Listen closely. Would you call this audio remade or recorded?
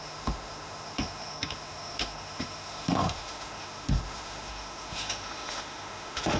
remade